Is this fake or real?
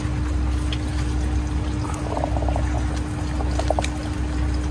real